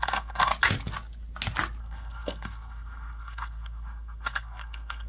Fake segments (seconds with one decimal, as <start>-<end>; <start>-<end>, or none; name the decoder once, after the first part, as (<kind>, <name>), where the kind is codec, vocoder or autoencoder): 0.0-0.5 (codec, SNAC); 1.8-5.1

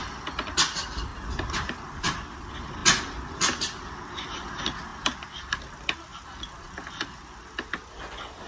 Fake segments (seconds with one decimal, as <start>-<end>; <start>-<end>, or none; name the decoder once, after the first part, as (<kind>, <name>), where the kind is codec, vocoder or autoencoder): none

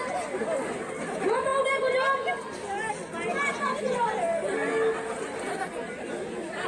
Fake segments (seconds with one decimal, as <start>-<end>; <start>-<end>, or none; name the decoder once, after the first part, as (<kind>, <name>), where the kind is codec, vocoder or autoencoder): none

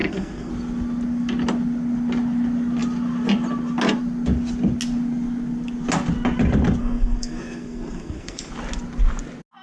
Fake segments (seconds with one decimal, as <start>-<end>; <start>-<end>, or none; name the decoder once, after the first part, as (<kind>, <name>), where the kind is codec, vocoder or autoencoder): 0.0-0.5 (codec, SNAC); 6.8-8.5

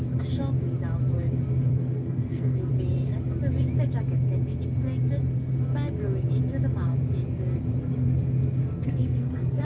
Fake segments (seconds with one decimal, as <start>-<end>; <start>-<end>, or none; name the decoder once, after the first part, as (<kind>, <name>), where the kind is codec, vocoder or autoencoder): 1.7-2.7 (codec, SNAC); 8.6-9.6

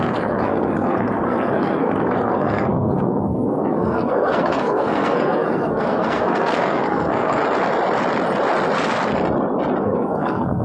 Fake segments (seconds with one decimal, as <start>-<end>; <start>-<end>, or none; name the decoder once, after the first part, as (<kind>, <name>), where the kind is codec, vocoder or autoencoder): 0.0-7.4 (codec, SNAC); 9.8-10.6

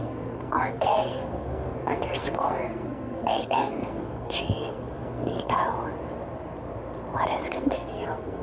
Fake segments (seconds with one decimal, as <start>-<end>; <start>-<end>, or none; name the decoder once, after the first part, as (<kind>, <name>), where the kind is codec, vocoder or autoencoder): 0.0-5.6 (codec, SNAC); 7.5-8.4

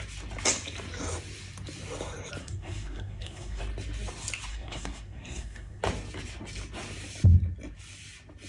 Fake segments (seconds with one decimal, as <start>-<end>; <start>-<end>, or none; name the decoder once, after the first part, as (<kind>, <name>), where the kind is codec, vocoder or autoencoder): 2.4-3.6 (codec, SNAC); 4.5-5.8